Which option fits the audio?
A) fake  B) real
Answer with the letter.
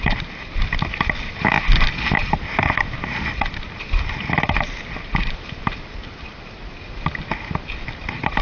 B